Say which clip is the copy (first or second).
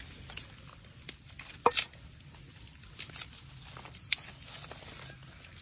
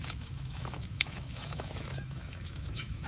second